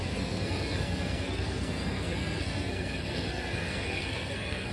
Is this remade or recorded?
remade